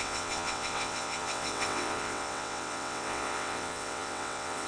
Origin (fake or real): fake